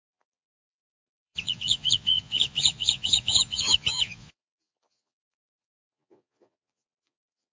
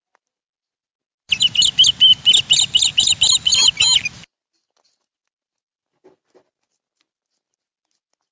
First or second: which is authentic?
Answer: second